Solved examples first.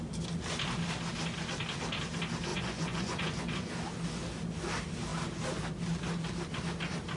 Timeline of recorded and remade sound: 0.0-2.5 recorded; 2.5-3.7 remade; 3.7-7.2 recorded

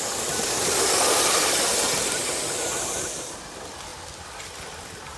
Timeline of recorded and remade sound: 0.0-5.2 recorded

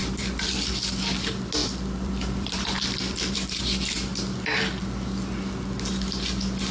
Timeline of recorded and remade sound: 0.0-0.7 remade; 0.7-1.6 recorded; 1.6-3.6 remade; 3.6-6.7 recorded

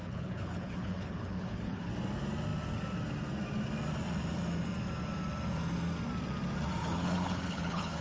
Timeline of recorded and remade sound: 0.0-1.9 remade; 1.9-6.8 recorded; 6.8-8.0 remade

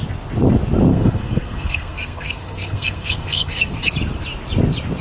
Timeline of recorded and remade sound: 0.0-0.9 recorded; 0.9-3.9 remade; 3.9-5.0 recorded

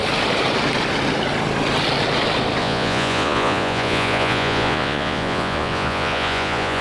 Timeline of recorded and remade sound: 0.0-2.6 recorded; 2.6-6.8 remade

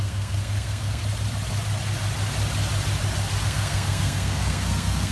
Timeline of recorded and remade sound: 0.0-1.0 remade; 1.0-3.4 recorded; 3.4-5.1 remade

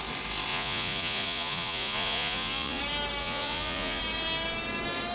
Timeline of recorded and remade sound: 0.0-0.5 recorded; 0.5-2.8 remade; 2.8-3.2 recorded; 3.2-4.0 remade; 4.0-5.1 recorded